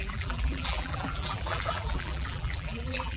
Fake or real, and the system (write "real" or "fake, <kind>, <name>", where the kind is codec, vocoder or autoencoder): fake, vocoder, BigVGAN v2